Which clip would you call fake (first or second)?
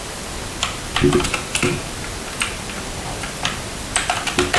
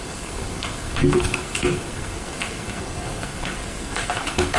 second